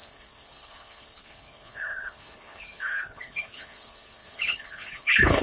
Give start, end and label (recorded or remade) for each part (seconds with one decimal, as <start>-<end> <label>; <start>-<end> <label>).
0.0-5.4 remade